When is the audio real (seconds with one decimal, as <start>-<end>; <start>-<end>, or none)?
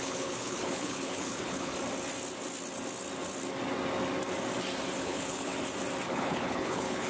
1.7-5.0; 5.5-6.1